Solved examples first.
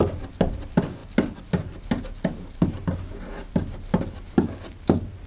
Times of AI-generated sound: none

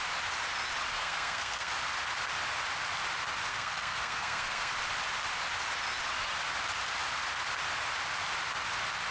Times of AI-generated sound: 0.9-1.7 (codec, SNAC); 3.5-4.7

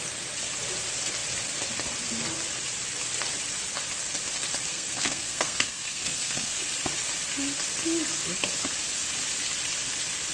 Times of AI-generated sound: 4.7-6.6 (codec, SNAC)

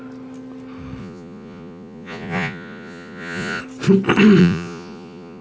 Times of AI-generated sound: 1.0-3.6 (vocoder, Vocos); 4.4-5.4

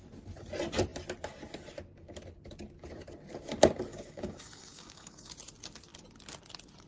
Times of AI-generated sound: 3.9-5.3 (codec, DAC)